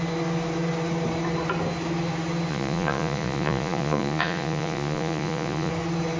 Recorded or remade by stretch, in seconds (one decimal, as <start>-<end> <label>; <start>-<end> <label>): 0.0-2.5 recorded; 2.5-5.7 remade; 5.7-6.2 recorded